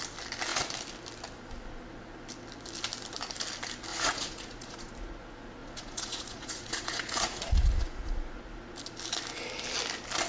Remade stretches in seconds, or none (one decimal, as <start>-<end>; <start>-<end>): 3.9-4.9; 5.6-8.4